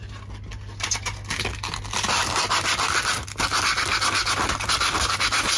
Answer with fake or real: real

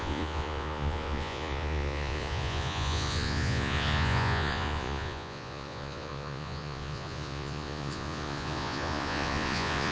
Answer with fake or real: fake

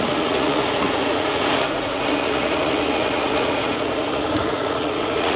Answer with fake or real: fake